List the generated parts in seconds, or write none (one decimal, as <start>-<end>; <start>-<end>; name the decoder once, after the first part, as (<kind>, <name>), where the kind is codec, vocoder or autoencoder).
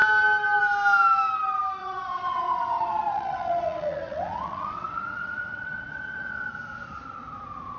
1.8-6.5 (vocoder, WaveNeXt)